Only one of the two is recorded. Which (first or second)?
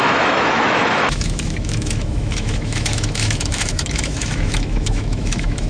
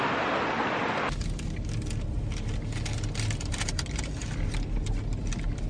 second